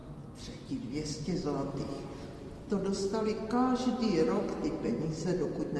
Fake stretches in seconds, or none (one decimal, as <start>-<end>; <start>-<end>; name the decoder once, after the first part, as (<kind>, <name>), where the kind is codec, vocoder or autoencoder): none